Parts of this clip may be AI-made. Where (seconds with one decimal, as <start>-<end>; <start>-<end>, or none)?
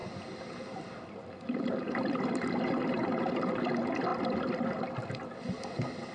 none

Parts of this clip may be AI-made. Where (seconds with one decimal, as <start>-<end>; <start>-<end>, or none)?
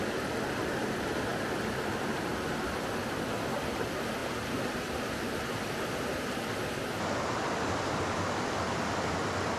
none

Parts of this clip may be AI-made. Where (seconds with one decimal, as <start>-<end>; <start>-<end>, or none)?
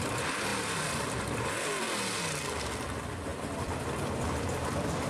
0.0-5.1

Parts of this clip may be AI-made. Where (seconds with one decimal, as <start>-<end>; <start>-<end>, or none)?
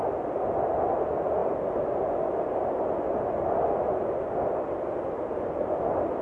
none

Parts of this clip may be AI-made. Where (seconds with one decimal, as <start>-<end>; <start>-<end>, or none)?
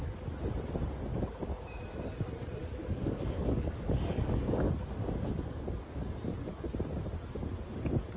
1.1-1.8; 2.6-6.5